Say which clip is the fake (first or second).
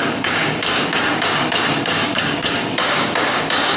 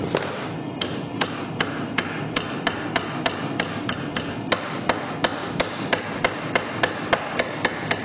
first